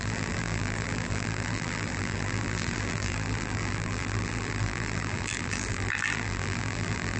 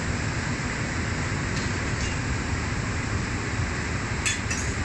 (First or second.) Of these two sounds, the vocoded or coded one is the first